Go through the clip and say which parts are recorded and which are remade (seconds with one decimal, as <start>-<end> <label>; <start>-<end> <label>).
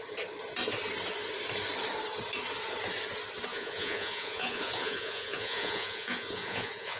0.0-3.5 recorded; 3.5-7.0 remade